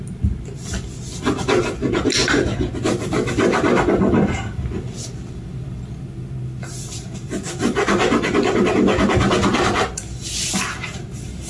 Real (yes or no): yes